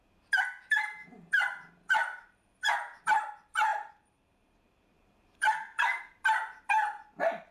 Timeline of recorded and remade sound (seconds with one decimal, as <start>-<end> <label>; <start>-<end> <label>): 0.0-1.0 recorded; 1.0-3.3 remade; 3.3-3.7 recorded; 3.7-6.0 remade; 6.0-7.5 recorded